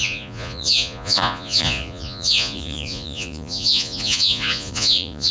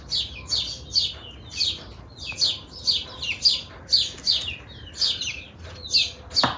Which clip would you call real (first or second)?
second